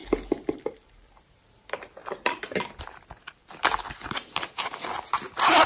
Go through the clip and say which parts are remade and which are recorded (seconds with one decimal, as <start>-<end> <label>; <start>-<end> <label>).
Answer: 0.0-3.4 recorded; 3.4-4.7 remade; 4.7-5.7 recorded